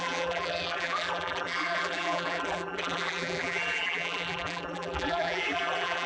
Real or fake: fake